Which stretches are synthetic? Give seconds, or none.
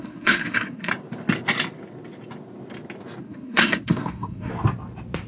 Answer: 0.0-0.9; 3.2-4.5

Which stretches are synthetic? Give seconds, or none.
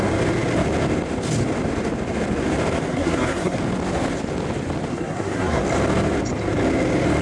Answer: 2.9-3.6; 4.9-5.6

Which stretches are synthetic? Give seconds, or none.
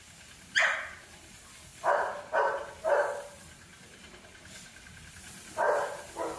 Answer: none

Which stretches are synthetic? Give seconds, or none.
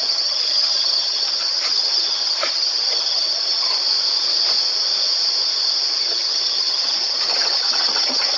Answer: 0.0-3.8; 6.0-8.4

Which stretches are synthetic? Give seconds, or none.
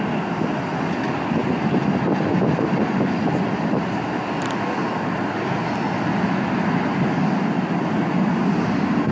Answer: none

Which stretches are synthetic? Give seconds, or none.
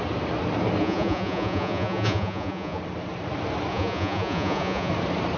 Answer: 0.8-2.8; 3.7-4.9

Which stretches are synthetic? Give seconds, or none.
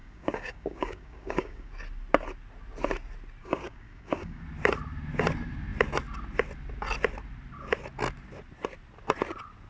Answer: 0.0-1.7; 3.4-4.4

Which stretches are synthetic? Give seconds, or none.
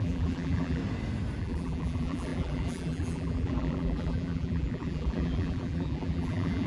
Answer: 0.0-0.8; 1.4-6.7